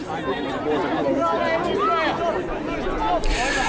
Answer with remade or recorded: recorded